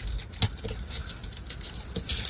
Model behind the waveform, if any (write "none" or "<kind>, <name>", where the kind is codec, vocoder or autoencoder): none